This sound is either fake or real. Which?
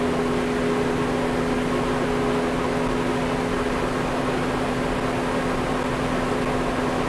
real